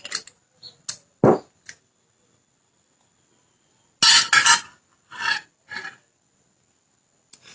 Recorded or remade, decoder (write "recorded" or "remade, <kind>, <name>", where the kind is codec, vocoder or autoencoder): recorded